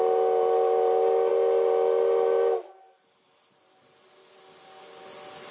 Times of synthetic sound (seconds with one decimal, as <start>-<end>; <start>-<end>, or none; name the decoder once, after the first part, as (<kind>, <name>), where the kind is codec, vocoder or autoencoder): none